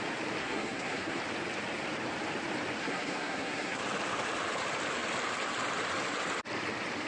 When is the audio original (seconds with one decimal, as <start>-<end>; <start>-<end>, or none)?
0.0-0.4; 1.2-2.8; 3.8-7.1